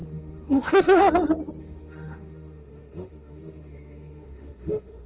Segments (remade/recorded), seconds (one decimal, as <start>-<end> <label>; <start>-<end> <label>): 0.0-1.0 remade; 1.0-1.6 recorded; 1.6-5.1 remade